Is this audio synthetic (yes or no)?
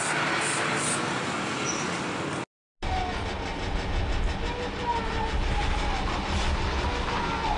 no